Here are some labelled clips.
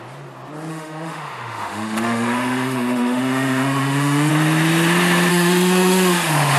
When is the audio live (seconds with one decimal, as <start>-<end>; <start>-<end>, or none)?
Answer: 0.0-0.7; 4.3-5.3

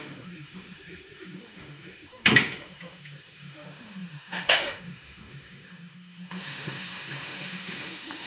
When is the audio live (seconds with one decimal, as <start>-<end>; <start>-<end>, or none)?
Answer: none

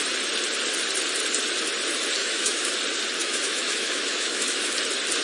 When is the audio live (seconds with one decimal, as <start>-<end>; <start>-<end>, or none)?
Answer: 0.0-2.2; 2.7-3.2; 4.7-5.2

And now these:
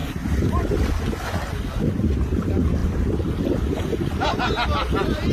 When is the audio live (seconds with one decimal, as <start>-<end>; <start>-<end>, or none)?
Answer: 0.0-5.3